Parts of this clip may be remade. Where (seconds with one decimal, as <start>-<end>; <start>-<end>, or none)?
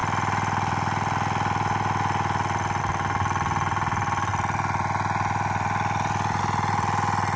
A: none